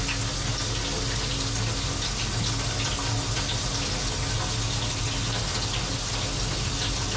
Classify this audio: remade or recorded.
recorded